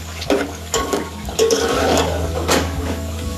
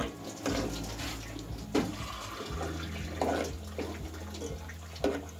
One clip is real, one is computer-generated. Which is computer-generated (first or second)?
first